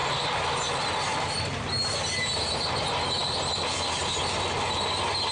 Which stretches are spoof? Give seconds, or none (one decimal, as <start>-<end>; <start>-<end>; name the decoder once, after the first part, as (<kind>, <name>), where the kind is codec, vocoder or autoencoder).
none